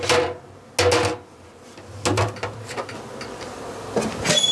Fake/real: real